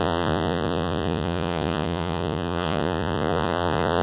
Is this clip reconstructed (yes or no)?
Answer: yes